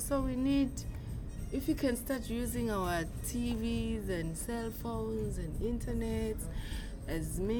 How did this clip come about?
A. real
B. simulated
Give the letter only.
A